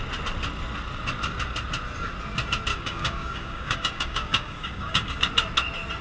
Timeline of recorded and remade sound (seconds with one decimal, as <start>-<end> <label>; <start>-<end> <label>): 0.0-2.7 recorded; 2.7-5.2 remade; 5.2-6.0 recorded